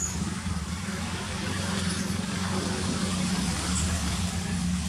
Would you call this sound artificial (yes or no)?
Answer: yes